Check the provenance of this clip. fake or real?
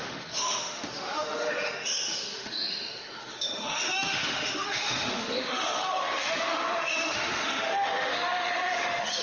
fake